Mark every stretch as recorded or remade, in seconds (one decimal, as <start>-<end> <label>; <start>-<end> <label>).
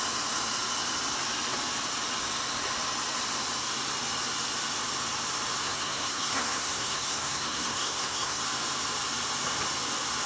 0.0-5.6 recorded; 5.6-8.4 remade; 8.4-10.3 recorded